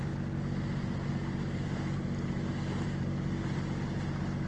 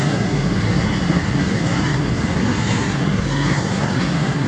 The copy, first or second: second